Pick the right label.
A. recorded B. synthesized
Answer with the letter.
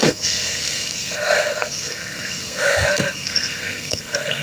B